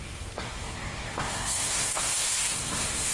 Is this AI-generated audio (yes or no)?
yes